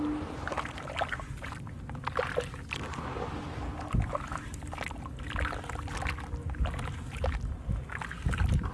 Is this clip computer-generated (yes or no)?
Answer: no